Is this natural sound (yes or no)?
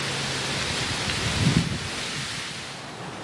yes